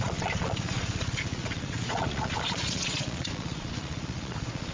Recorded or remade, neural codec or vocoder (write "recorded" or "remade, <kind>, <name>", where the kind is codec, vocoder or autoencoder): remade, vocoder, Vocos